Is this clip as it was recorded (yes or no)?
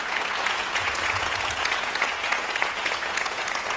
no